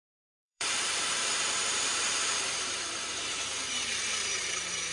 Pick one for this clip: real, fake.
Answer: fake